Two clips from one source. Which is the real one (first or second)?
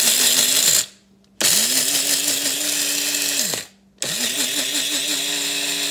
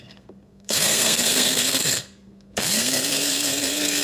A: first